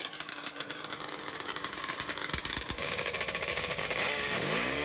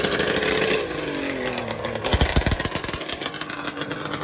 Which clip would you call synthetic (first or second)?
first